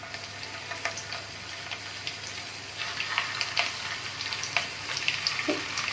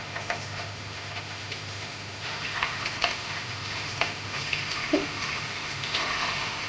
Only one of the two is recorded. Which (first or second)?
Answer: first